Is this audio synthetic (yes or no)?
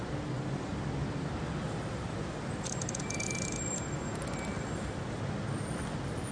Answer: no